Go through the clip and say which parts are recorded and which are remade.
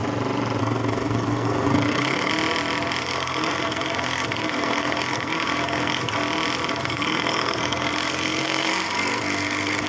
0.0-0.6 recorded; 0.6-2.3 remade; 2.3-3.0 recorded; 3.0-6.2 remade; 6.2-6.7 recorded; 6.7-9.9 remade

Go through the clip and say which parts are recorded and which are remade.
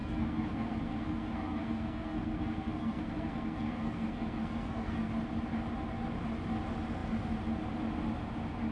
0.0-5.1 remade; 5.1-8.7 recorded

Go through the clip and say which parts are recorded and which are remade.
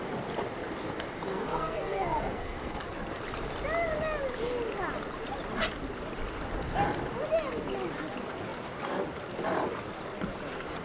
0.0-1.3 recorded; 1.3-3.2 remade; 3.2-10.8 recorded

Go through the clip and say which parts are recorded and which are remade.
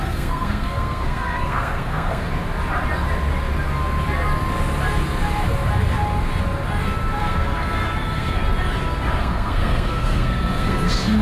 0.0-2.3 remade; 2.3-7.2 recorded; 7.2-8.4 remade; 8.4-9.2 recorded; 9.2-11.2 remade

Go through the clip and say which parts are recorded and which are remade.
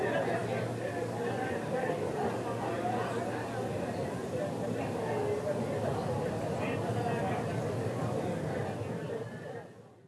0.0-10.1 recorded